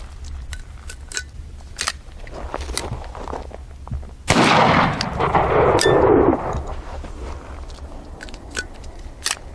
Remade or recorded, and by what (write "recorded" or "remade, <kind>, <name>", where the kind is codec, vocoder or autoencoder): recorded